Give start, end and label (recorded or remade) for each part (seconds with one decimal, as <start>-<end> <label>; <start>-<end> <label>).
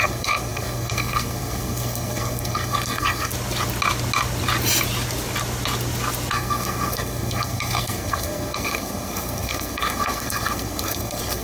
0.0-3.3 remade; 3.3-6.3 recorded; 6.3-11.4 remade